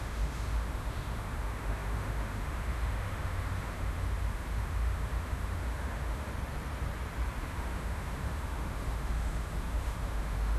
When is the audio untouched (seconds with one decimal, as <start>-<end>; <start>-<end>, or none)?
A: 6.3-7.4